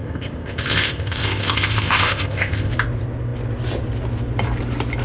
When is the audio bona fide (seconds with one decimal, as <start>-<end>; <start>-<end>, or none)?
2.7-5.0